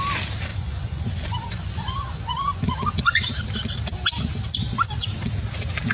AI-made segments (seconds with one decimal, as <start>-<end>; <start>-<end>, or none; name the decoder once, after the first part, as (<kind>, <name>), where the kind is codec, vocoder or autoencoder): 0.5-3.3 (vocoder, Vocos)